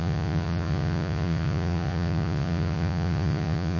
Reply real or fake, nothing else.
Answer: fake